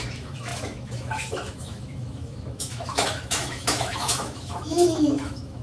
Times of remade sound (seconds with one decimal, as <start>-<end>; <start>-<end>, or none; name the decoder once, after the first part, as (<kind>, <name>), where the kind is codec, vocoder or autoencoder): 0.0-5.6 (autoencoder, DAC-VAE)